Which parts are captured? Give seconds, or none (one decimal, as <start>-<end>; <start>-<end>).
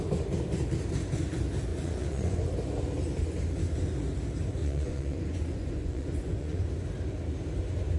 0.0-1.7; 2.4-4.6; 6.7-8.0